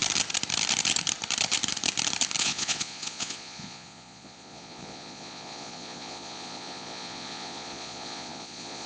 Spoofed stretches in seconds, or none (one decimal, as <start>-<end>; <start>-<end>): 2.4-8.9